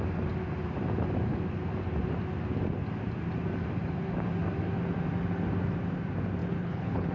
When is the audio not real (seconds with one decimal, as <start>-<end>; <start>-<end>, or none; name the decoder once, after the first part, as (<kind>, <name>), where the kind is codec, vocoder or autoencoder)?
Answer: 6.4-7.1 (codec, HILCodec)